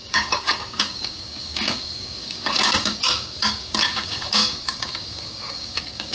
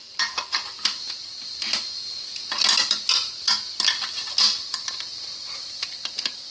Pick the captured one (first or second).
second